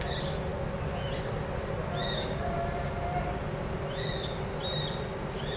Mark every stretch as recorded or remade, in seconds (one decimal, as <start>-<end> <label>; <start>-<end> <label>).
0.0-5.6 recorded